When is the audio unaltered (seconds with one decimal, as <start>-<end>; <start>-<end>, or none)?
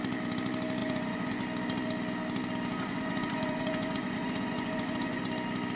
0.0-0.8; 1.4-2.7; 5.2-5.8